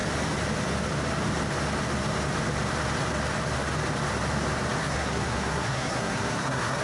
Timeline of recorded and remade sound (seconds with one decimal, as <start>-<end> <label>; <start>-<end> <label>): 0.0-4.8 recorded; 4.8-6.8 remade